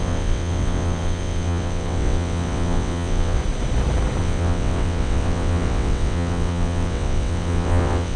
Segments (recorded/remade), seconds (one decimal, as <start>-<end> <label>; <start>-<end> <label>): 0.0-3.4 remade; 3.4-4.2 recorded; 4.2-8.2 remade